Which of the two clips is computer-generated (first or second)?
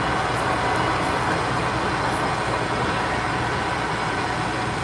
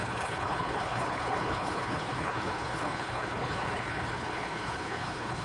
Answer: second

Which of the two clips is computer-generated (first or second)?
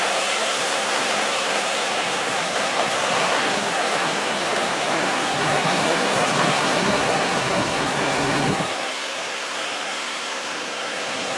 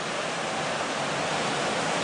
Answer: first